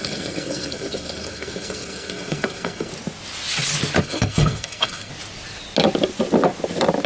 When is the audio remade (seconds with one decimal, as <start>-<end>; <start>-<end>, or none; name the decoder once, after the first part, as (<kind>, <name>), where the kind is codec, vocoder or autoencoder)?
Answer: 0.0-2.9 (codec, SNAC); 4.0-5.1

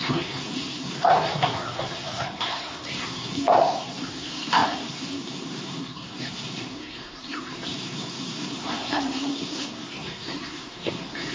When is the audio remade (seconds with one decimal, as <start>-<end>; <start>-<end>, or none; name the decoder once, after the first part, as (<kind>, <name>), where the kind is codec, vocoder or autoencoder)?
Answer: 0.0-11.3 (codec, SNAC)